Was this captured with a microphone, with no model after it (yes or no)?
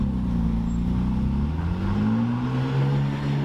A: yes